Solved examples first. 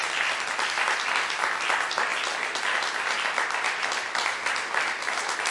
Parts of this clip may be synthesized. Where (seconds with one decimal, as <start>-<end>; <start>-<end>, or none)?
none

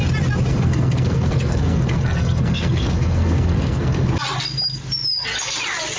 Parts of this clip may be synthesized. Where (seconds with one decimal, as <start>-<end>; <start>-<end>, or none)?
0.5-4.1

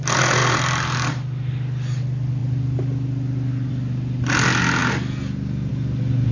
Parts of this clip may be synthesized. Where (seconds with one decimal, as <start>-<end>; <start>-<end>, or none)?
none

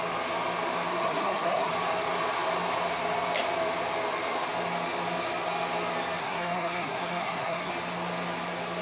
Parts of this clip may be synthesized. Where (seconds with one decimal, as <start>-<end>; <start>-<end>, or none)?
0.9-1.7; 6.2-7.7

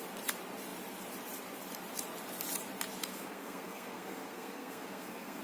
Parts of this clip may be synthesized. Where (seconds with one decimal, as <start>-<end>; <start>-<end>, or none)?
3.1-5.4

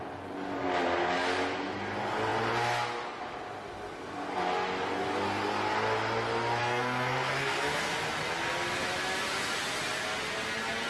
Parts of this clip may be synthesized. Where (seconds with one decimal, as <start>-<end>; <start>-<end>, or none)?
6.6-7.9